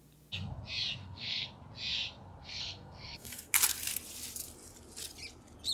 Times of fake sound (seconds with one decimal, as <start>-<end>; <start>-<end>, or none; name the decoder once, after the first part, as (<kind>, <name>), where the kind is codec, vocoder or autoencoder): 1.0-1.5 (codec, SNAC); 2.4-3.5